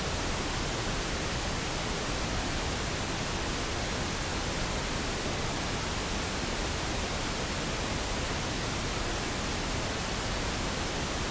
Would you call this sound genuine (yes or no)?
yes